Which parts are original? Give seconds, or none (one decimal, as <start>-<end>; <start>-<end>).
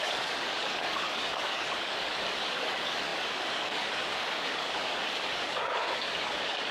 none